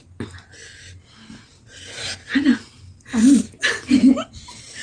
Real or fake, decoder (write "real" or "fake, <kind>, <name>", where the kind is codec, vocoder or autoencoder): real